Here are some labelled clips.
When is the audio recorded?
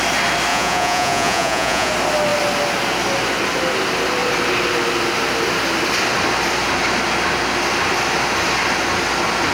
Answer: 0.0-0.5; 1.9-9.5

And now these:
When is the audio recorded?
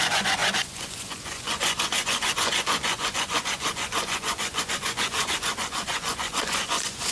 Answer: none